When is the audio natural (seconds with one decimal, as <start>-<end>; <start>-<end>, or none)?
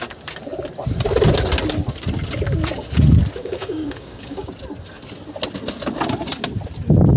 0.0-3.4; 4.5-7.2